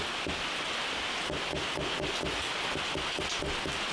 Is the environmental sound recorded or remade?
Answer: recorded